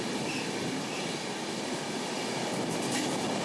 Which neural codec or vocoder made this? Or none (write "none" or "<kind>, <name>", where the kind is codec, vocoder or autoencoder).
none